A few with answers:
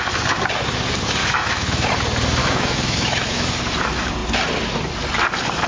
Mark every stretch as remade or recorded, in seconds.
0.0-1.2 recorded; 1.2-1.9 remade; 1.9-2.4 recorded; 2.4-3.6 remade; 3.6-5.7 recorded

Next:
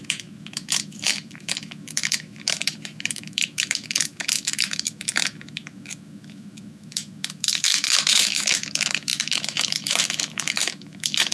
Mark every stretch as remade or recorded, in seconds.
0.0-11.3 remade